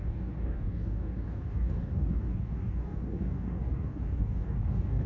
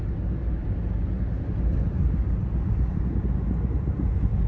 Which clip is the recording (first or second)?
second